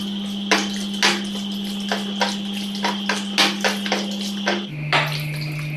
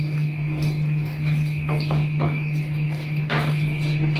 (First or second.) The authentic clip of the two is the first